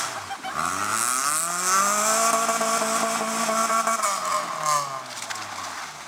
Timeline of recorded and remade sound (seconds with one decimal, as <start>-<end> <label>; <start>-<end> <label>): 0.0-6.1 recorded